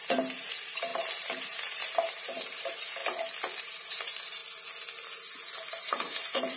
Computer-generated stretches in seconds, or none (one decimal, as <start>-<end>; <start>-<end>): 0.0-0.9; 1.4-3.0; 3.6-4.4; 5.7-6.6